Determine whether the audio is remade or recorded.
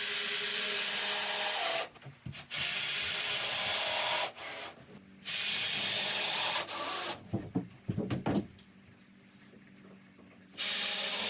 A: recorded